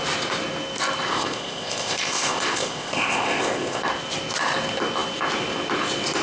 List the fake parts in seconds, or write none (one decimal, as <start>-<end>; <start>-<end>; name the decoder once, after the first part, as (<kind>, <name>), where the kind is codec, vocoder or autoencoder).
1.1-3.8 (codec, ZipCodec)